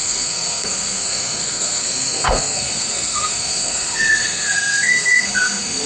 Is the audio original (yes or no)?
no